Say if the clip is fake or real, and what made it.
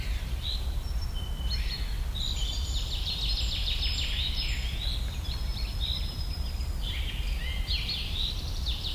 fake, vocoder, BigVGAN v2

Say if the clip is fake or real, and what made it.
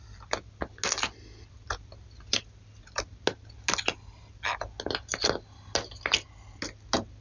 real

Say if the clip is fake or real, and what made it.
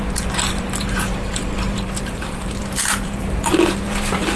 fake, vocoder, BigVGAN v2